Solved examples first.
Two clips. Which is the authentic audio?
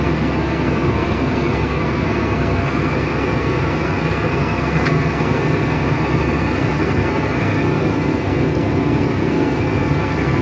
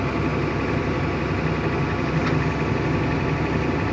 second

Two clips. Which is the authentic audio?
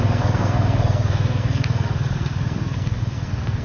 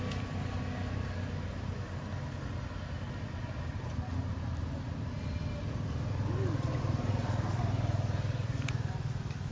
second